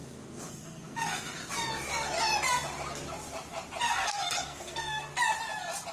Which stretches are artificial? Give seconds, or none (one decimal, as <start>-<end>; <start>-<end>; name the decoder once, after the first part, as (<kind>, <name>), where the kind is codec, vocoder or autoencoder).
0.0-1.4 (codec, SNAC); 3.8-5.1